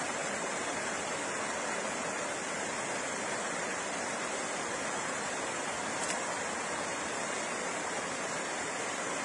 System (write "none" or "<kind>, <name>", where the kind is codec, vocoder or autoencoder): none